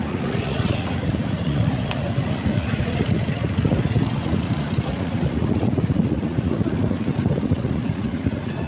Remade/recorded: remade